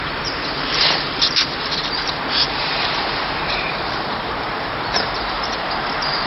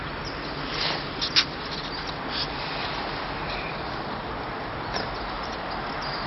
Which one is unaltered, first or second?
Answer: second